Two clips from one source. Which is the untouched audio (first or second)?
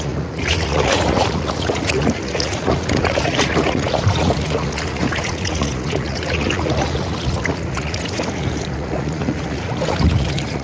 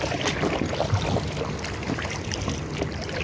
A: second